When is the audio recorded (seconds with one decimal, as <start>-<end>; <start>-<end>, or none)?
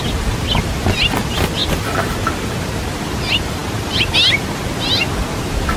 0.0-5.8